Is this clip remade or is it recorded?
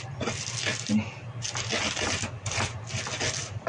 recorded